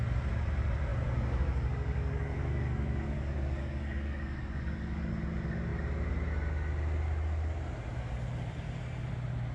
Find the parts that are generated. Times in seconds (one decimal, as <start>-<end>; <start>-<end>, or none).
0.9-5.1